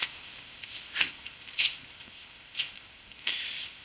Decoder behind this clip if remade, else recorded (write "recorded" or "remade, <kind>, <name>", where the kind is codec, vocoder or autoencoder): remade, codec, ZipCodec